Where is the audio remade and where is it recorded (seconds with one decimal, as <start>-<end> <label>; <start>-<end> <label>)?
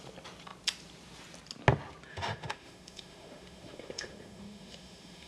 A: 0.0-2.1 recorded; 2.1-5.3 remade